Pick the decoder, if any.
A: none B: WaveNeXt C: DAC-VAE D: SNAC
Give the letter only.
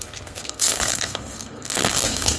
D